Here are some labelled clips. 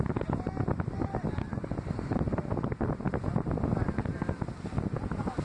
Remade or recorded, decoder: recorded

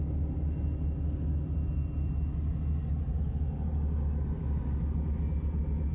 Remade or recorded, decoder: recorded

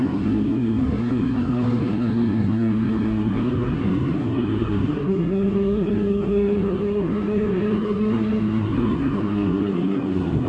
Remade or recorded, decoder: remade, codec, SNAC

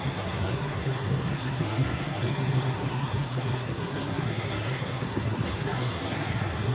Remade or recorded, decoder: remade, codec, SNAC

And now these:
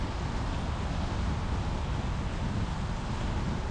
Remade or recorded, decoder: recorded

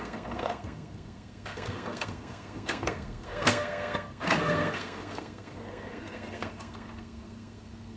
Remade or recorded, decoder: remade, codec, SNAC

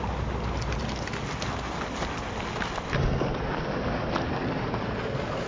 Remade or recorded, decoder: recorded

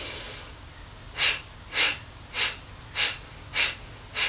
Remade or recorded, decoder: recorded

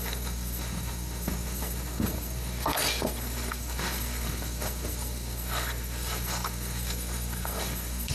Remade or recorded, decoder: remade, codec, SNAC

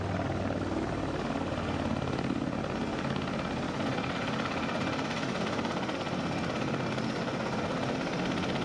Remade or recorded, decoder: recorded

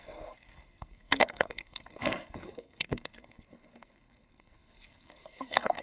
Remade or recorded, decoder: remade, codec, SNAC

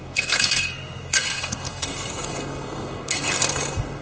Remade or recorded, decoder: remade, codec, SNAC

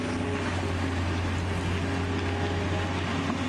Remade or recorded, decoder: recorded